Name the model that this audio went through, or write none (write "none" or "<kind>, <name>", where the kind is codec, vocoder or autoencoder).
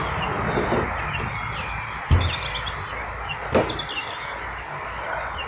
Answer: none